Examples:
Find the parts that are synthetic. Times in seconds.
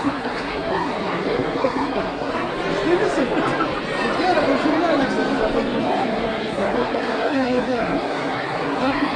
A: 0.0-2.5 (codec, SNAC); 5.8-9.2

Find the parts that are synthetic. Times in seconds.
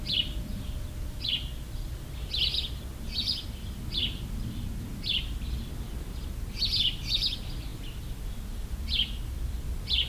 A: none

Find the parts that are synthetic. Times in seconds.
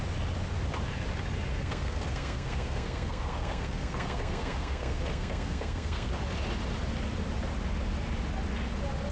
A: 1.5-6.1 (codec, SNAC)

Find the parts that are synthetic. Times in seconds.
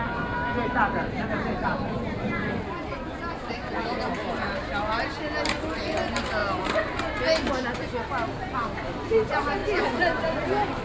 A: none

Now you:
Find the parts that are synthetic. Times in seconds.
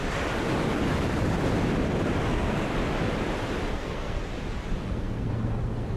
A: 2.3-2.7 (codec, SNAC); 3.7-4.3; 4.8-6.0